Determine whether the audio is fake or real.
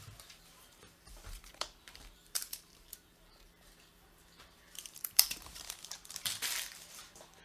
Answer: fake